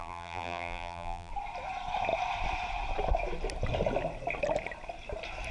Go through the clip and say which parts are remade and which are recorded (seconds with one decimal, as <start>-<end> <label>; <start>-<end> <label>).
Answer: 0.0-1.3 remade; 1.3-5.5 recorded